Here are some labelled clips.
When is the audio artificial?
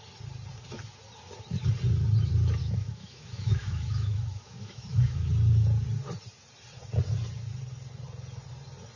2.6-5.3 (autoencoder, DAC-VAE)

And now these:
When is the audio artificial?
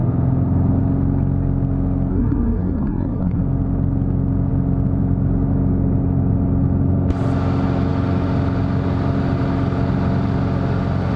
2.1-3.4 (codec, SNAC)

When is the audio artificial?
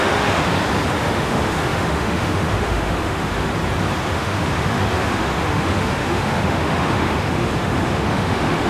0.0-0.5 (autoencoder, DAC-VAE); 1.0-3.5; 4.1-8.7